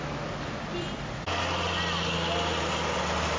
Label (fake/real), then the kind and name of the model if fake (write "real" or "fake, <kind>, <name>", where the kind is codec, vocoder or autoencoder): real